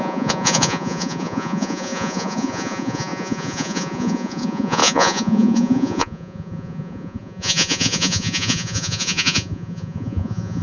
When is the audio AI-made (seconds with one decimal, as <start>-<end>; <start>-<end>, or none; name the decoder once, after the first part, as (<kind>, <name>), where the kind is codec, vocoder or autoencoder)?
0.0-10.6 (vocoder, Vocos)